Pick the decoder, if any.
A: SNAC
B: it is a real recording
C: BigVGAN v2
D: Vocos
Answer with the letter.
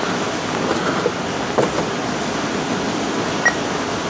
B